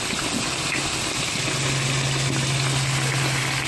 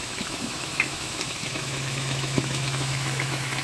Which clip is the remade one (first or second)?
second